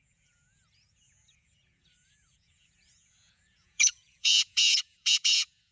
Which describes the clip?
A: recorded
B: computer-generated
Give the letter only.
B